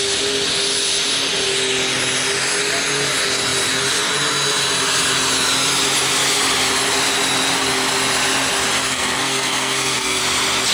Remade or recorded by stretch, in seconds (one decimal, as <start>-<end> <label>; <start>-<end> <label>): 0.0-8.8 recorded; 8.8-10.2 remade; 10.2-10.7 recorded